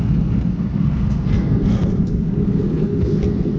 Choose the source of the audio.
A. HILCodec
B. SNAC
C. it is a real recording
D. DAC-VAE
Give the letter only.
B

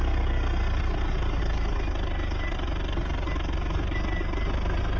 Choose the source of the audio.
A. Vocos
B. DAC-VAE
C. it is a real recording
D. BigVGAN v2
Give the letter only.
C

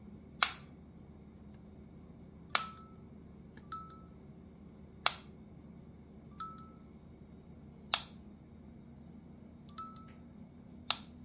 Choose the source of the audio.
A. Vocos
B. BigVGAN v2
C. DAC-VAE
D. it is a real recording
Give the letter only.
D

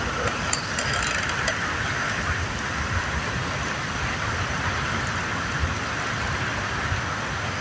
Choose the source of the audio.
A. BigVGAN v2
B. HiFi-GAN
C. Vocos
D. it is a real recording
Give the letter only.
D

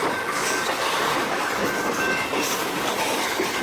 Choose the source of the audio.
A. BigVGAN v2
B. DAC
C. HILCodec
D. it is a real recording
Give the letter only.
B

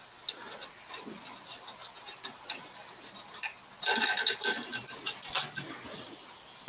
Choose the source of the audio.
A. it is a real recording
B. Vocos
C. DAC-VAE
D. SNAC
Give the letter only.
A